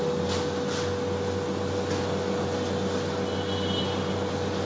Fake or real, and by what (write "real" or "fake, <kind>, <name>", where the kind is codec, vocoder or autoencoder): real